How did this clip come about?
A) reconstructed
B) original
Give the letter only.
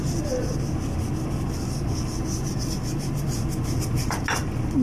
B